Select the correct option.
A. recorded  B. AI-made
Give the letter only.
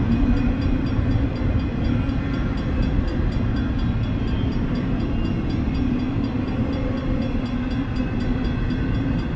A